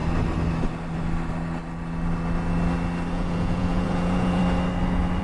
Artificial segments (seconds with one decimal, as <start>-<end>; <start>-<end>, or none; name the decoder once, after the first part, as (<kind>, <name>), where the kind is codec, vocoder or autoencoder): 3.1-4.4 (vocoder, Vocos)